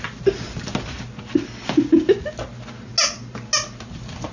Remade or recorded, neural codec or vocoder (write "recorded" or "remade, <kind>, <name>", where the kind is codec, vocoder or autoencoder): recorded